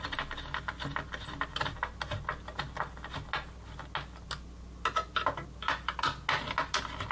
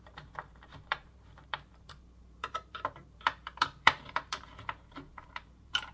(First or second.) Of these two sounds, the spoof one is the second